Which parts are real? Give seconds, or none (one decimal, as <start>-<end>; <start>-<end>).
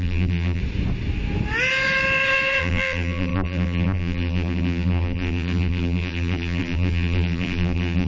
0.6-2.6